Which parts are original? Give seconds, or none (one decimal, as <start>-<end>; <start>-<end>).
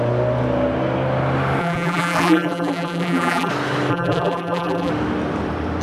0.0-1.6; 3.5-3.9; 4.9-5.8